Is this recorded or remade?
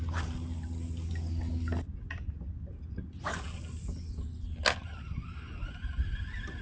recorded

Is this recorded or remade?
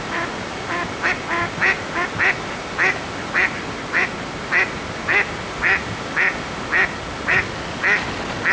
recorded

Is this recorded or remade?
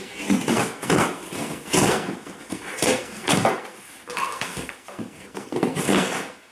remade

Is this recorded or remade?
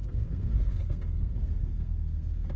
remade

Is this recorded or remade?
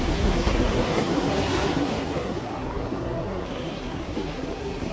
remade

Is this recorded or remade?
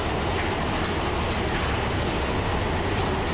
recorded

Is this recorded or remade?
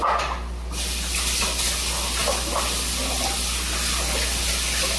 recorded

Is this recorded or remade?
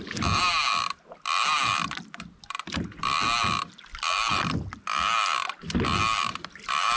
recorded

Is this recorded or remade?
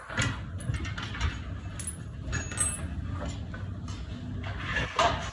recorded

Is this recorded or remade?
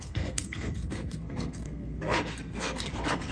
remade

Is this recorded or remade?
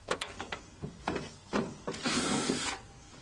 remade